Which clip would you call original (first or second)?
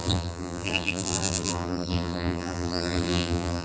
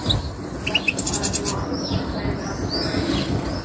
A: second